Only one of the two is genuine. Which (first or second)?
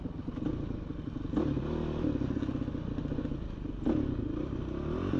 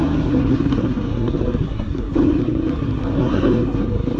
first